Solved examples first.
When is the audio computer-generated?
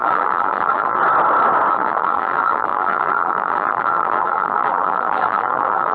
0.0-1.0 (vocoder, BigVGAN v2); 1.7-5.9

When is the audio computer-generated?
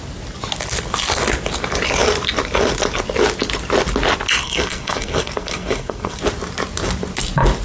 4.4-6.2 (codec, SNAC)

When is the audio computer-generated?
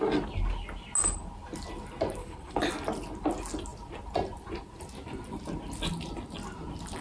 2.2-2.7 (codec, HILCodec)